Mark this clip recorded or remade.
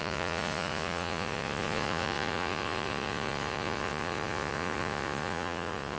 remade